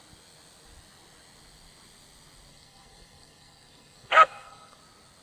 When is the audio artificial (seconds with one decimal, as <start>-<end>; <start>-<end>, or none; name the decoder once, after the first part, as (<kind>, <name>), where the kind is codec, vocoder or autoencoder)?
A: 2.5-4.8 (codec, SNAC)